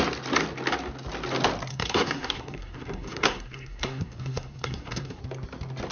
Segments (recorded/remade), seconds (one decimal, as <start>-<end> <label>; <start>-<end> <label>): 0.0-1.7 recorded; 1.7-5.2 remade; 5.2-5.9 recorded